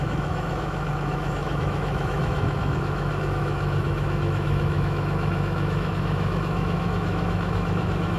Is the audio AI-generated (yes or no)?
yes